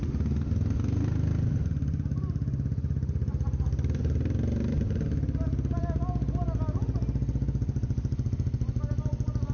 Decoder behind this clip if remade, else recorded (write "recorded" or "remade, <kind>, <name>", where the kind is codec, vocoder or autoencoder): recorded